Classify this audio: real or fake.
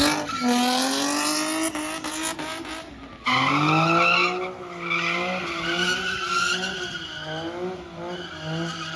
real